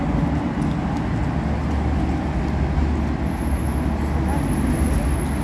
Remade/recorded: recorded